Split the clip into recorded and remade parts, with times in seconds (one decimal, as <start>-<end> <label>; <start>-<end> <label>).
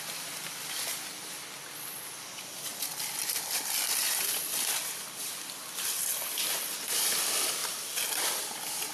0.0-8.9 recorded